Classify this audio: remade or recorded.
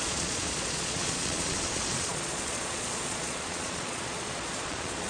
remade